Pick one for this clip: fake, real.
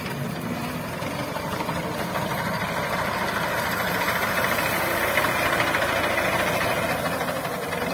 real